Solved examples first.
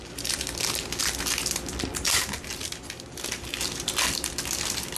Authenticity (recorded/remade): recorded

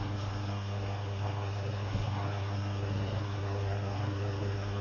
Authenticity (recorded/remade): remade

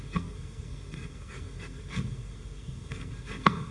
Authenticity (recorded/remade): remade